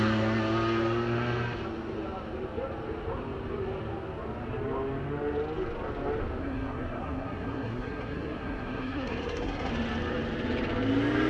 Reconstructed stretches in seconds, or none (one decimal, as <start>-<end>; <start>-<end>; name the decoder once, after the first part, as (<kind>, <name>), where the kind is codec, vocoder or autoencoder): 6.4-9.7 (codec, SNAC)